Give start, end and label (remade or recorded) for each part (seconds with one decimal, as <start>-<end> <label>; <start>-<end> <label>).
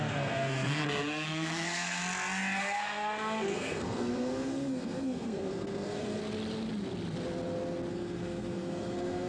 0.0-2.0 remade; 2.0-2.6 recorded; 2.6-6.2 remade; 6.2-7.9 recorded; 7.9-9.3 remade